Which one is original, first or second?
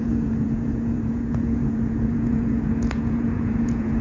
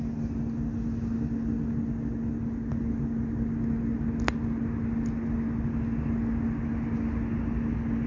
second